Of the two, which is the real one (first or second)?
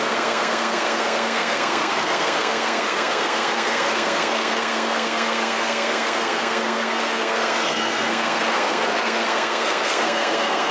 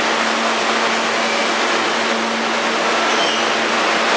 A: second